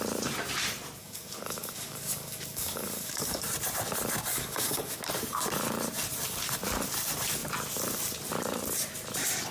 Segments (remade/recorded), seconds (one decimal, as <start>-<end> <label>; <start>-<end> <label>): 0.0-1.0 recorded; 1.0-3.4 remade; 3.4-4.3 recorded; 4.3-5.0 remade; 5.0-9.5 recorded